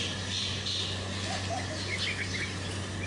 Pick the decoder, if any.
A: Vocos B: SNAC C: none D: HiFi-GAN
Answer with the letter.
C